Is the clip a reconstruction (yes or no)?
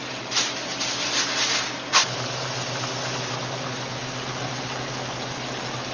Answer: no